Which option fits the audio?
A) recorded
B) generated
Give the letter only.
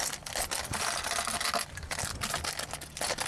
A